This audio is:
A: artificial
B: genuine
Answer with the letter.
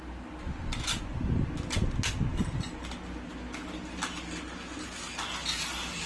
B